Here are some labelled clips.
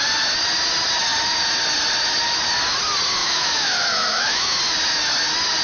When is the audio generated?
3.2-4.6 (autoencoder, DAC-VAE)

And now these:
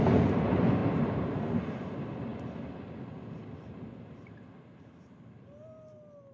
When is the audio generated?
none